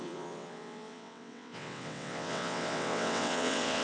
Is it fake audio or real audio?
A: fake